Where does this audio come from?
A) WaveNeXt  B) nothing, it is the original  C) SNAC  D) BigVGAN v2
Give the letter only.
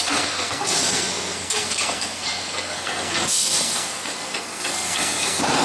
C